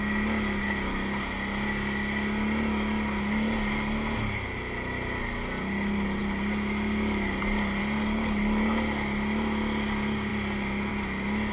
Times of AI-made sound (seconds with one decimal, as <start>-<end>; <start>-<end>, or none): none